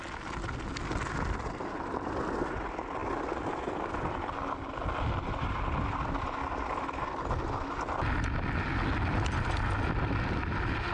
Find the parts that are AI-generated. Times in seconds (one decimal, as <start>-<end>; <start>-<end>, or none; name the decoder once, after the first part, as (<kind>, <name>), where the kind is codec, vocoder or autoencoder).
3.0-3.7 (vocoder, BigVGAN v2)